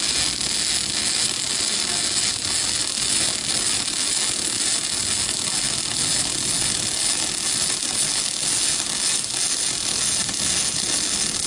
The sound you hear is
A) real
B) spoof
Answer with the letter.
A